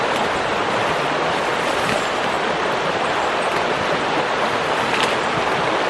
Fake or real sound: real